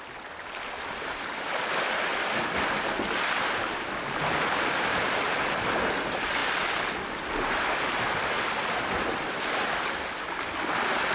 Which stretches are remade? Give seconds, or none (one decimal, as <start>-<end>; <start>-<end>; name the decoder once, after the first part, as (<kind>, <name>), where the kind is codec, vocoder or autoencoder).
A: none

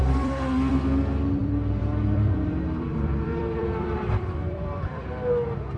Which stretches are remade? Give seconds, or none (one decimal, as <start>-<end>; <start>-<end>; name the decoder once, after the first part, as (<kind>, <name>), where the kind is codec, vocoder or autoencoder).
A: 0.0-0.7 (vocoder, BigVGAN v2); 1.4-4.9

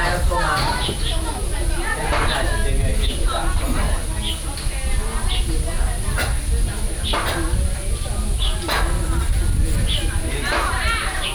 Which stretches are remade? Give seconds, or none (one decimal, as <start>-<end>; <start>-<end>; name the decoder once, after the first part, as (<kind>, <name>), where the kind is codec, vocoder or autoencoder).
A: none